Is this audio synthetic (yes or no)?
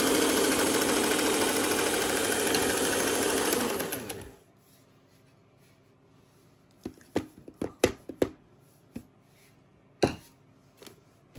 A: no